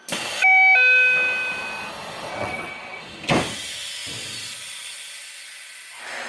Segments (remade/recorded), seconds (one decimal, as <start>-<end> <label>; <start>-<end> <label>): 0.0-2.3 recorded; 2.3-3.0 remade; 3.0-6.3 recorded